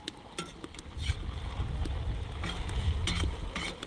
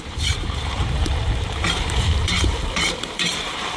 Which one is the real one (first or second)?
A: first